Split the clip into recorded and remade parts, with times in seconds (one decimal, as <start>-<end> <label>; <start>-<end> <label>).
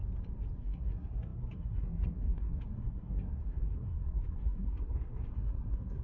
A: 0.0-0.6 recorded; 0.6-6.0 remade